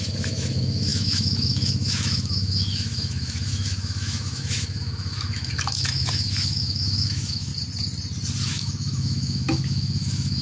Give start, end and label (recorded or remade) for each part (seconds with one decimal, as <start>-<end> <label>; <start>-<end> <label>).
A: 0.0-7.5 remade; 7.5-8.5 recorded; 8.5-10.4 remade